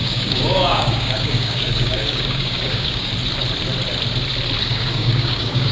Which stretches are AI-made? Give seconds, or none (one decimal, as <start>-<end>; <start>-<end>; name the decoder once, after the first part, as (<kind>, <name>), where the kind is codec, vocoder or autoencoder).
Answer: 0.0-3.1 (codec, DAC); 4.6-5.7